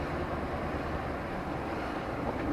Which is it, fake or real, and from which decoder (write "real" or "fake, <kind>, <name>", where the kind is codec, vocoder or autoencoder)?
real